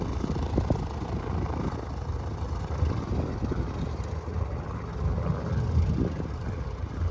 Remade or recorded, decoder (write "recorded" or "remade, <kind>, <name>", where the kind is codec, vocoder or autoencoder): recorded